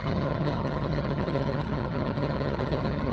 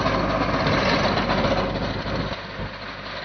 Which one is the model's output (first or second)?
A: first